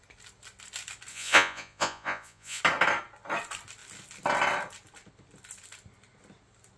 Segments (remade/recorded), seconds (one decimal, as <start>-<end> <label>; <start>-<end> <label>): 0.0-1.1 recorded; 1.1-2.6 remade; 2.6-6.8 recorded